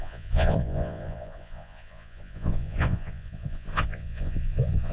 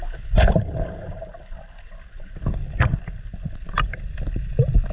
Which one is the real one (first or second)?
second